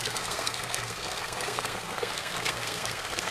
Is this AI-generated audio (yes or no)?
yes